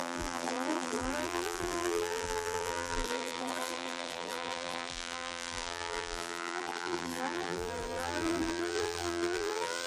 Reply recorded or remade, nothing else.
remade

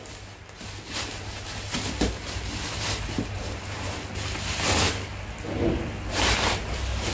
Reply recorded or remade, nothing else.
recorded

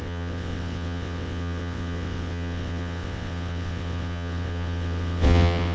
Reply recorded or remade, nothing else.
remade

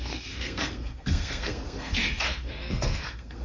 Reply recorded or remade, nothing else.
remade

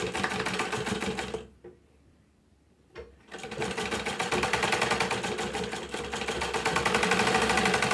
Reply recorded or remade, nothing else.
recorded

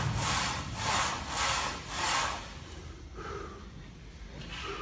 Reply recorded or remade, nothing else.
recorded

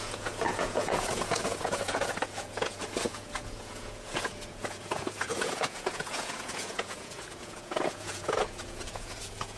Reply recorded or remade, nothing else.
remade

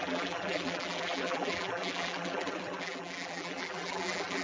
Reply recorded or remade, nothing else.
remade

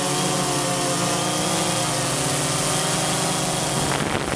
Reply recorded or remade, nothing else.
recorded